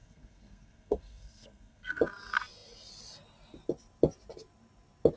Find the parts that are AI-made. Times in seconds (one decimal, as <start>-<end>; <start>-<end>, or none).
0.0-2.0